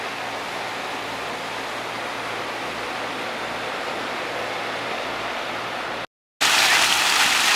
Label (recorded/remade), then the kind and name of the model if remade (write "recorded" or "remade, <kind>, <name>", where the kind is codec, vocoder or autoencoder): recorded